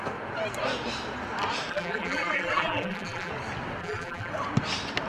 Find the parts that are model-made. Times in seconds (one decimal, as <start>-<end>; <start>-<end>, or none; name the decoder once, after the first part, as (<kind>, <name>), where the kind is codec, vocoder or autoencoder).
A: 1.7-3.3 (vocoder, BigVGAN v2); 3.8-4.3

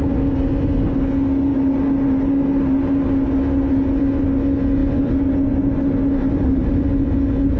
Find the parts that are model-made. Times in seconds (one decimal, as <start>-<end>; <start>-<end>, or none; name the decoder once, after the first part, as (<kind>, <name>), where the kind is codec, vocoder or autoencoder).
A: none